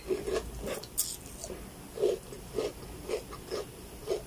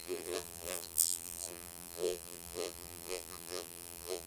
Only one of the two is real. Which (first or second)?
first